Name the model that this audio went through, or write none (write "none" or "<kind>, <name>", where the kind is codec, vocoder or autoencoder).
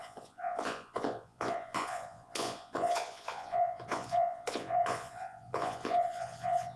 vocoder, Vocos